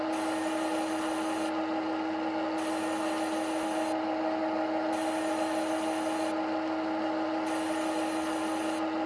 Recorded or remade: recorded